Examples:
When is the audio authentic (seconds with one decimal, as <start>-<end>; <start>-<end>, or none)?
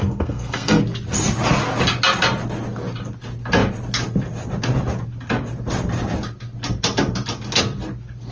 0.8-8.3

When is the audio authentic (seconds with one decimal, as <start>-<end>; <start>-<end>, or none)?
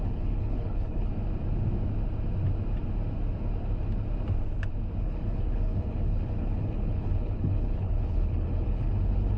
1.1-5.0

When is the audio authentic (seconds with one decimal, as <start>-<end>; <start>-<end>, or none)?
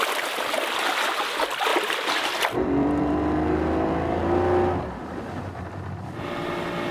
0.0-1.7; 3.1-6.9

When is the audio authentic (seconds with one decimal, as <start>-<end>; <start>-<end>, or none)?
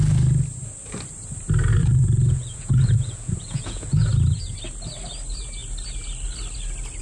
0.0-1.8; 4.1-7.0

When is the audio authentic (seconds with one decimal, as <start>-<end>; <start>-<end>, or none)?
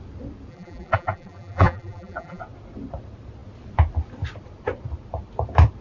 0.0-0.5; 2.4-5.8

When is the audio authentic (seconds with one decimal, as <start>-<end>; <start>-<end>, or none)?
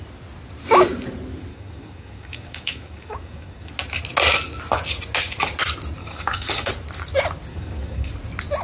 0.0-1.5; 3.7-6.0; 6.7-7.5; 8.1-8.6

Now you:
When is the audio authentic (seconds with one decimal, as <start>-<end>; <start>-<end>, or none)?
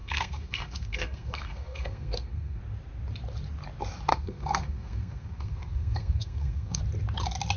2.6-4.1; 6.8-7.6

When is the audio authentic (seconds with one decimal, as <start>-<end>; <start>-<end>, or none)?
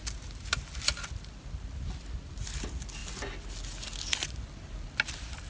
0.0-5.5